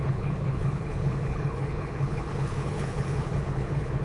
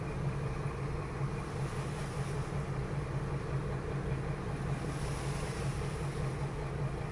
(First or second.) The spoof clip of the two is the first